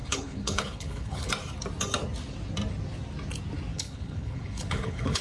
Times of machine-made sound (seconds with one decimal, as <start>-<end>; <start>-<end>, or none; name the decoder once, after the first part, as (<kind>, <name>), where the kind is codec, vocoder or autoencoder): 0.0-1.3 (codec, HILCodec); 3.7-5.2